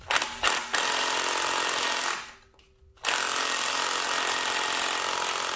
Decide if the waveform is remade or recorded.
recorded